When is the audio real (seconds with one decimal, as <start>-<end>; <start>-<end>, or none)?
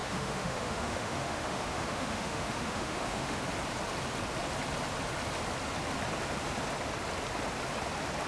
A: 3.4-8.3